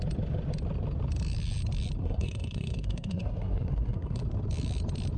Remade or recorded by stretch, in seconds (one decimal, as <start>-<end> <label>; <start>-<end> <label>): 0.0-2.0 recorded; 2.0-4.2 remade; 4.2-5.2 recorded